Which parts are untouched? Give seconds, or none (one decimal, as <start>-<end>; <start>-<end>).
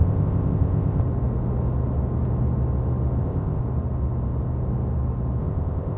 1.0-3.2; 3.6-5.4